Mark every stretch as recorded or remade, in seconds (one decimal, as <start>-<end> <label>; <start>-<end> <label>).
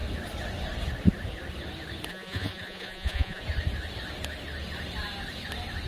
0.0-2.1 recorded; 2.1-3.4 remade; 3.4-5.9 recorded